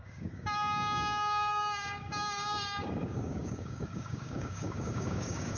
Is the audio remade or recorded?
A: remade